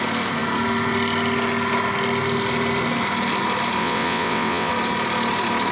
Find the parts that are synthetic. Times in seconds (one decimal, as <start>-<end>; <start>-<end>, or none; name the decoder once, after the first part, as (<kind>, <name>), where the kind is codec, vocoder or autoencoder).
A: 3.8-4.7 (vocoder, WaveNeXt)